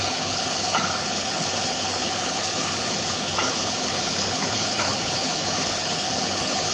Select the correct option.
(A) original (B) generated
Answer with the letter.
B